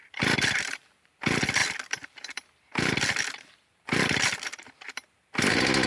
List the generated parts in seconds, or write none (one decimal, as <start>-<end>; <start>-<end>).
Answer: 0.0-1.2; 1.6-4.7